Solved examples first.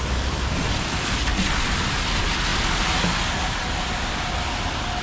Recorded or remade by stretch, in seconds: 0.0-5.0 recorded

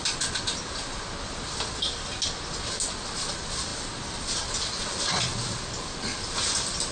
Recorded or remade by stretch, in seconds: 0.0-6.9 recorded

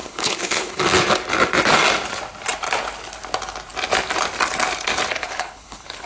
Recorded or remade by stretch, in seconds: 0.0-0.8 remade; 0.8-5.1 recorded; 5.1-6.1 remade

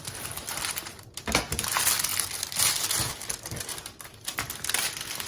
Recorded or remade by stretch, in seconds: 0.0-5.3 recorded

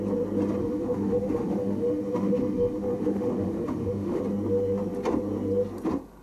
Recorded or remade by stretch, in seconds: 0.0-0.6 recorded; 0.6-4.2 remade; 4.2-6.2 recorded